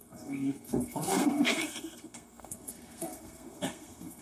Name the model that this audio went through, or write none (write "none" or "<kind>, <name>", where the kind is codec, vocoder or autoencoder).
codec, SNAC